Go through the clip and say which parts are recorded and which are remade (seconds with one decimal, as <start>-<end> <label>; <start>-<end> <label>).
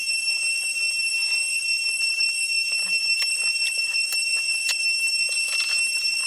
0.0-6.3 recorded